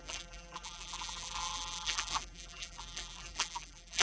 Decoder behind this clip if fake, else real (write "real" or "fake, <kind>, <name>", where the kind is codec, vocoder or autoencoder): fake, vocoder, BigVGAN v2